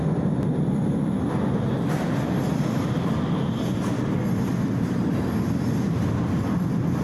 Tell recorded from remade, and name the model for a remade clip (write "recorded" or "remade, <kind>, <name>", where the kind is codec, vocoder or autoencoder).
recorded